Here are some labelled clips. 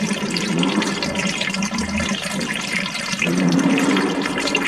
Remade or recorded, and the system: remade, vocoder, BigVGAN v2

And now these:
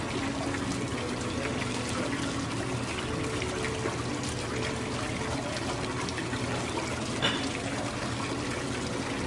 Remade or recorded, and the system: recorded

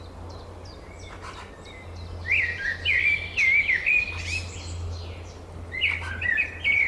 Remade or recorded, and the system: recorded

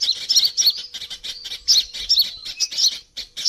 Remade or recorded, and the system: recorded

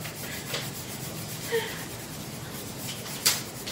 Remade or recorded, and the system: remade, vocoder, BigVGAN v2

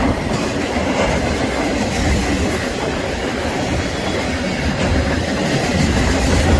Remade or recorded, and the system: recorded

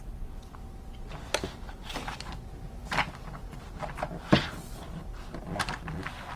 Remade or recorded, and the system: recorded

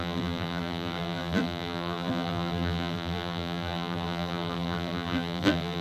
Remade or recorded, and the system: remade, vocoder, BigVGAN v2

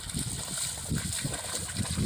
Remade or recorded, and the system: recorded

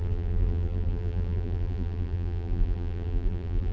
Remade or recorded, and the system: remade, vocoder, BigVGAN v2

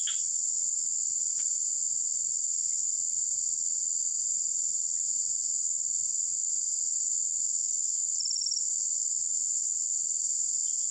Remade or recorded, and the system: recorded